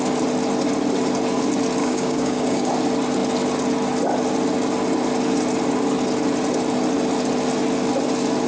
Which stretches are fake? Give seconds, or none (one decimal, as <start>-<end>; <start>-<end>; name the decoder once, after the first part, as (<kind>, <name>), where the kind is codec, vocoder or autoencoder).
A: 1.8-2.7 (codec, DAC)

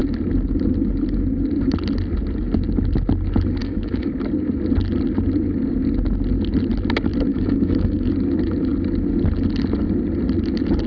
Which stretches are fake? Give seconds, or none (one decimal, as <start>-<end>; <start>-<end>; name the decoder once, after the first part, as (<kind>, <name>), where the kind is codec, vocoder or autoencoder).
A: 3.6-4.1 (autoencoder, DAC-VAE); 7.3-8.1

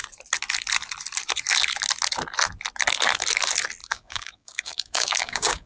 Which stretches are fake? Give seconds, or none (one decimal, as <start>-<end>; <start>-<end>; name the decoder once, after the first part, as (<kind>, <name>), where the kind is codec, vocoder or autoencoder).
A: 3.8-5.7 (codec, DAC)

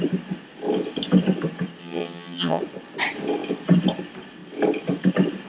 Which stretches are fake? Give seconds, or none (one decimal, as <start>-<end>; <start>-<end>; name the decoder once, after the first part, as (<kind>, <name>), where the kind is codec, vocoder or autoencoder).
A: 1.8-2.6 (vocoder, HiFi-GAN)

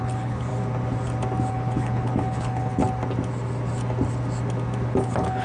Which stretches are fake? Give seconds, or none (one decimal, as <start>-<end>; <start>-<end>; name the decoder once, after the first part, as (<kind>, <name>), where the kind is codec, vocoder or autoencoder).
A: 0.0-0.5 (codec, HILCodec); 1.5-2.8; 5.0-5.4

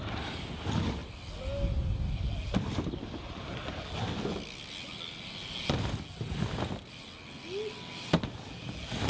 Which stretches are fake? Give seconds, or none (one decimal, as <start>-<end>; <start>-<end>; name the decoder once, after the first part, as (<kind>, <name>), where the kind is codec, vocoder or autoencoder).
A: none

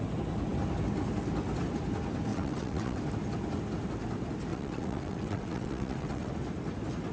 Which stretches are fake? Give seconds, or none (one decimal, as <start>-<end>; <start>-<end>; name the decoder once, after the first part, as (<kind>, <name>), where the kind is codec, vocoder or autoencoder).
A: 2.3-3.0 (vocoder, WaveNeXt); 4.5-6.3